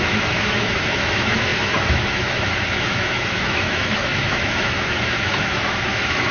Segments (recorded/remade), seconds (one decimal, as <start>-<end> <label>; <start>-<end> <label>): 0.0-6.3 remade